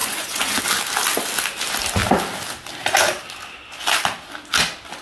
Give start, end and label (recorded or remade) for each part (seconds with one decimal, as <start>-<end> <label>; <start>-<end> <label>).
0.0-0.6 remade; 0.6-5.0 recorded